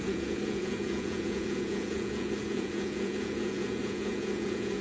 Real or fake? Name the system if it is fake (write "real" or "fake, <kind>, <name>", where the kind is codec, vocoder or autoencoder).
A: fake, vocoder, Vocos